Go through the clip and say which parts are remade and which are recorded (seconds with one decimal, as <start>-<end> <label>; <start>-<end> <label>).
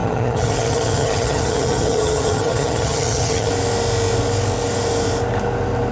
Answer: 0.0-3.5 remade; 3.5-5.9 recorded